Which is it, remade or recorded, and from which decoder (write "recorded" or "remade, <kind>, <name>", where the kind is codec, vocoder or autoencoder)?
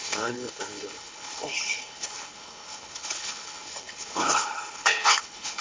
remade, codec, HILCodec